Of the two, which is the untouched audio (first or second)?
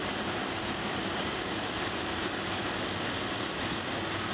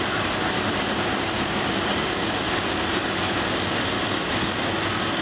second